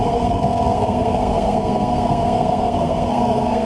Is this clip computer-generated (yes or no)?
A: yes